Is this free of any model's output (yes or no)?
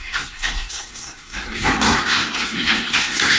no